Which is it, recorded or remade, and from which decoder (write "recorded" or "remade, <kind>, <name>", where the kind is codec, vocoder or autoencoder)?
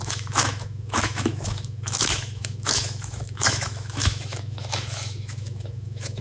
remade, autoencoder, DAC-VAE